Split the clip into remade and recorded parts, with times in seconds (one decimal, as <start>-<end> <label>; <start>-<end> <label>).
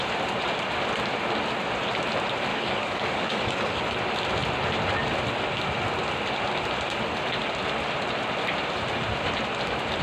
0.0-2.5 recorded; 2.5-3.8 remade; 3.8-10.0 recorded